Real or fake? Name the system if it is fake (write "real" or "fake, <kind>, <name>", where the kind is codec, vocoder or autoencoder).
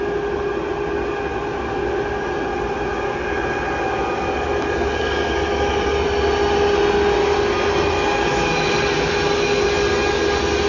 real